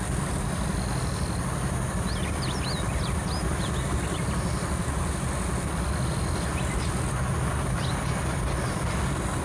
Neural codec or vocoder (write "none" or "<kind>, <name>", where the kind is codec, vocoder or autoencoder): none